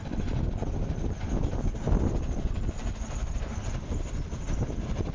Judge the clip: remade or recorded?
recorded